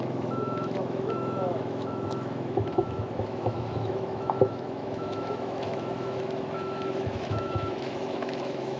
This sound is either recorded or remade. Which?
remade